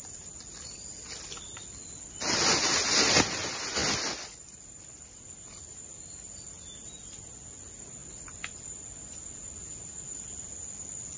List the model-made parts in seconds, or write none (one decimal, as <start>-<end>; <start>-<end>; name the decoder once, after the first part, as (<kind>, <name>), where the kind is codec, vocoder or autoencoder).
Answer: none